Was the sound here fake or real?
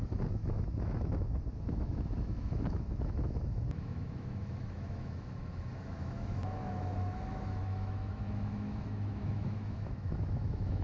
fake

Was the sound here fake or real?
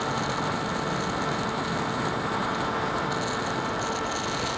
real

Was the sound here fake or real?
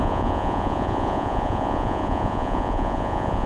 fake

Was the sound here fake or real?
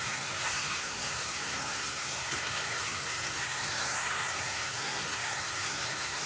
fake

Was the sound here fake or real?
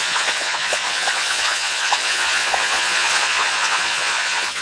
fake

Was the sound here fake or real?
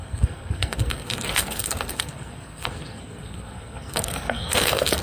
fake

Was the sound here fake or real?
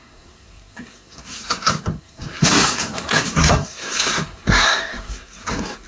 fake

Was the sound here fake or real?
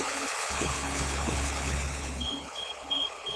fake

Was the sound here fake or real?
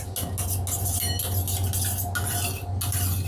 real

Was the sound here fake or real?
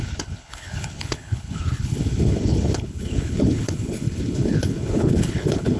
fake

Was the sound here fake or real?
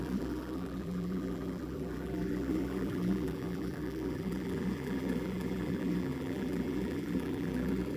fake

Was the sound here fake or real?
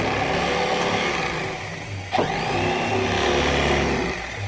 real